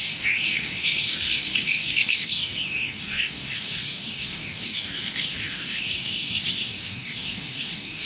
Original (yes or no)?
no